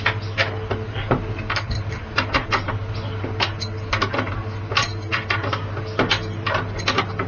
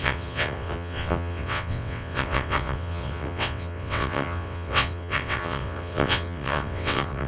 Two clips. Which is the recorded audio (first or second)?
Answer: first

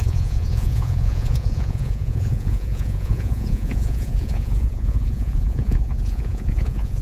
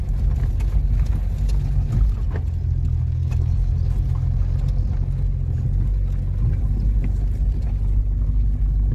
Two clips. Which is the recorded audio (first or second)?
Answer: second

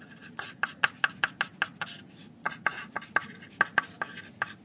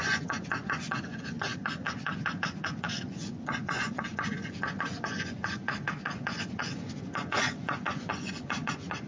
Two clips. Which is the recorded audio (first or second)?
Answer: first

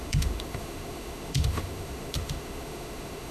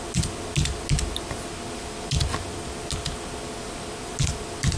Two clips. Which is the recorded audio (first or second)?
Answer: second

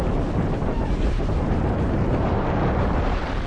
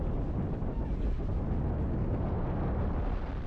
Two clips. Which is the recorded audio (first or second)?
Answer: second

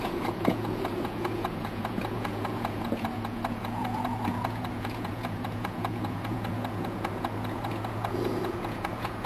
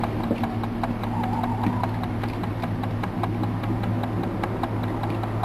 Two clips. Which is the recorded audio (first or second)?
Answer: second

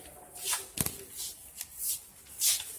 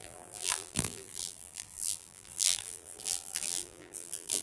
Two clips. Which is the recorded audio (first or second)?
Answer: first